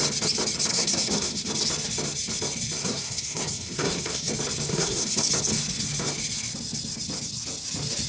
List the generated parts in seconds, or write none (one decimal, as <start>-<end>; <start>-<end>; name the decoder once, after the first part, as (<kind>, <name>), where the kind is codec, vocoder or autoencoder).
0.7-1.5 (codec, SNAC); 2.8-4.3; 4.7-5.3